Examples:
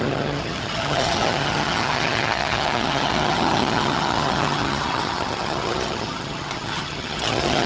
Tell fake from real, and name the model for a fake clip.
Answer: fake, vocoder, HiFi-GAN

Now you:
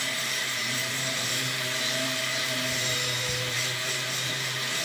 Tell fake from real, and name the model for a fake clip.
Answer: fake, vocoder, BigVGAN v2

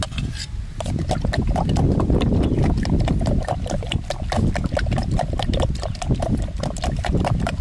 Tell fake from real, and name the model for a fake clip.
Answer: real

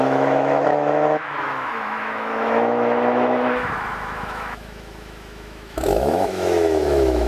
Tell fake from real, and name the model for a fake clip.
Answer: fake, autoencoder, DAC-VAE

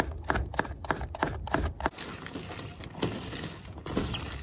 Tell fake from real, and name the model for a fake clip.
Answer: real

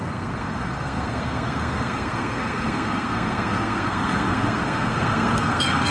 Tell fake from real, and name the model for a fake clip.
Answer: fake, codec, SNAC